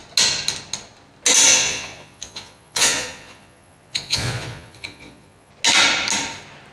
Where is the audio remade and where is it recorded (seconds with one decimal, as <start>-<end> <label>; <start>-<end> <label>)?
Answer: 0.0-1.5 recorded; 1.5-5.5 remade; 5.5-6.7 recorded